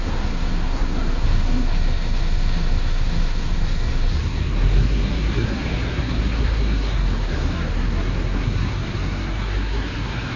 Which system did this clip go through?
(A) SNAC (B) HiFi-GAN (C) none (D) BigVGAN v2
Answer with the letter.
A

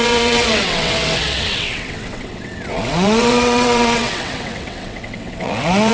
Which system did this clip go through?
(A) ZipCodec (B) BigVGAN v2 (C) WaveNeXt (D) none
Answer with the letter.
C